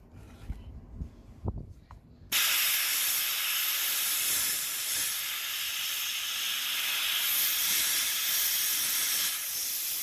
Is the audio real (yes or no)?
yes